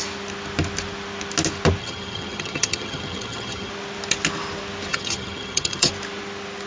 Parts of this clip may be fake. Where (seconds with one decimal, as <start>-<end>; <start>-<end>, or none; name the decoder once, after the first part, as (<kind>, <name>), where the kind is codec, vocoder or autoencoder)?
1.8-3.7 (vocoder, HiFi-GAN); 4.9-5.9